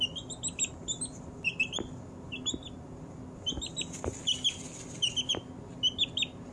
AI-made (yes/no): no